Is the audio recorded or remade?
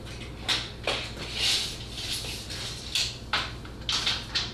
recorded